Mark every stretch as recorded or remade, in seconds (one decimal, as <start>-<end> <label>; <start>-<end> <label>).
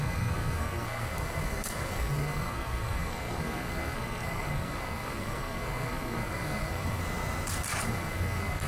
0.0-7.0 remade; 7.0-7.8 recorded; 7.8-8.7 remade